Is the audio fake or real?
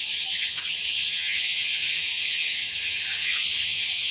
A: fake